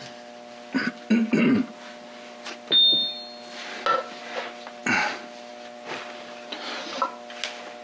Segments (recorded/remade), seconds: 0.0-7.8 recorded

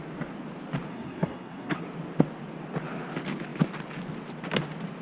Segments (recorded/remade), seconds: 0.0-0.9 recorded; 0.9-1.8 remade; 1.8-5.0 recorded

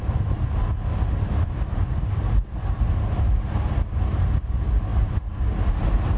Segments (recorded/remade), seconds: 0.0-6.2 recorded

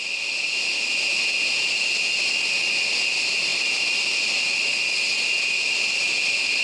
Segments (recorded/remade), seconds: 0.0-3.5 recorded; 3.5-4.1 remade; 4.1-6.6 recorded